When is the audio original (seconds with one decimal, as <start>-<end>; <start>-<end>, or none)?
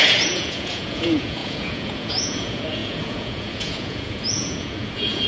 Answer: none